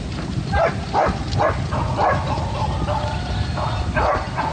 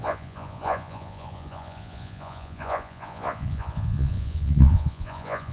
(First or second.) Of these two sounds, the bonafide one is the first